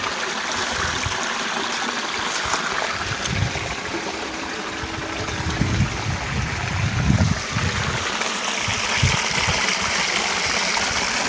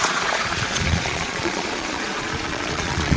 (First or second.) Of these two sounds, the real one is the first